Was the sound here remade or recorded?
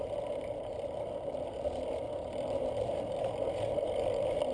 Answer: recorded